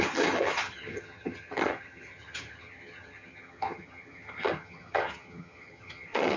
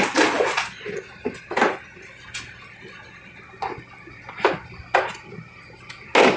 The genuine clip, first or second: second